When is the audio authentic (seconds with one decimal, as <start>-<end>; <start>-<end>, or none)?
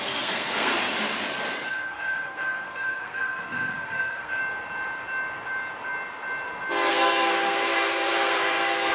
0.7-1.7; 4.4-6.9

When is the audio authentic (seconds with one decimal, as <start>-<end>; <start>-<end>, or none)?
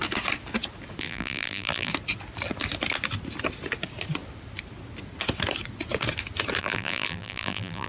0.0-1.0; 1.9-6.6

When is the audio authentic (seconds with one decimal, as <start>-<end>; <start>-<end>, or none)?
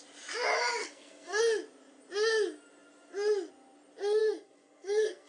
0.0-0.8; 1.4-4.2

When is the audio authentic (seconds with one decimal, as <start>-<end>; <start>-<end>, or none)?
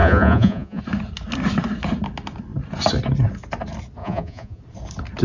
0.8-4.0; 4.6-5.2